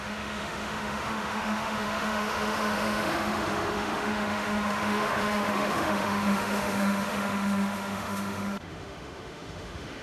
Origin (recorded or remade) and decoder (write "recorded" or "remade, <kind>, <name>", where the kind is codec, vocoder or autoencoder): remade, autoencoder, DAC-VAE